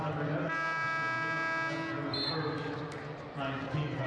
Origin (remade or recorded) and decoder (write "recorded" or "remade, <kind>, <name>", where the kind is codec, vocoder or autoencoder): recorded